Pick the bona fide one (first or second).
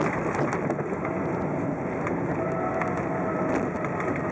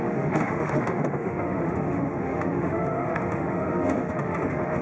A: first